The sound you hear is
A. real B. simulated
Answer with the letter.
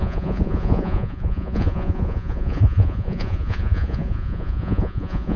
B